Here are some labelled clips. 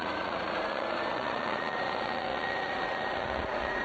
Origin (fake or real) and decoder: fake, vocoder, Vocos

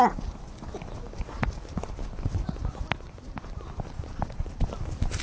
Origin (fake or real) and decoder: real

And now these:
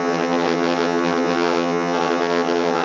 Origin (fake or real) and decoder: fake, vocoder, HiFi-GAN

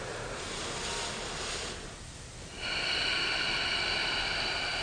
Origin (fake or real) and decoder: real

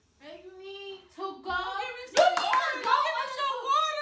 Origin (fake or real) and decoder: real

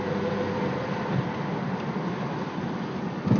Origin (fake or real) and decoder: real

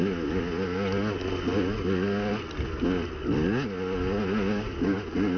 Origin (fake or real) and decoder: real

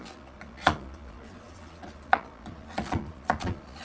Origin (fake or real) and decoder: fake, vocoder, Vocos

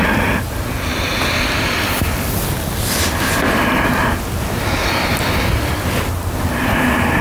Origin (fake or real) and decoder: real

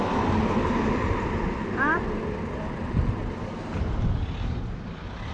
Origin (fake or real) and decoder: real